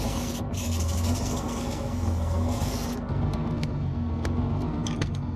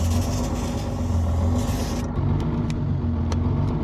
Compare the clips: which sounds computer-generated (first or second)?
first